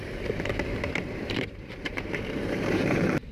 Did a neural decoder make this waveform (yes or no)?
yes